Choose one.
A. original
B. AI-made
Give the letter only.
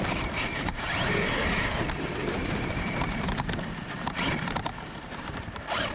B